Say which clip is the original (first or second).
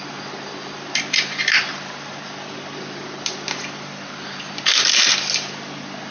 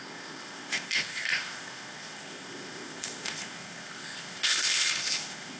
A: first